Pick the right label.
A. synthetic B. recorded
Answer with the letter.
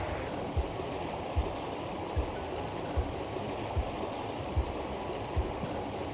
B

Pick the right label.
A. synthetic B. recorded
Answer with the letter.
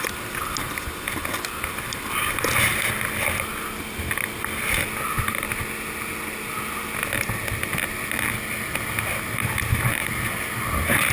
B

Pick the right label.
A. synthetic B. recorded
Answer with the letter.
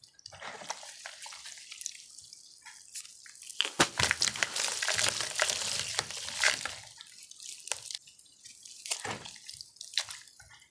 B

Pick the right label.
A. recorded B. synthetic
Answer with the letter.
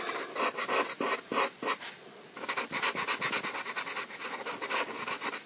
A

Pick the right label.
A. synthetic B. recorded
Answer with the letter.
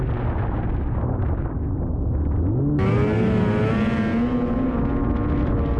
B